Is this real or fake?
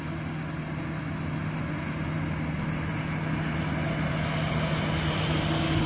real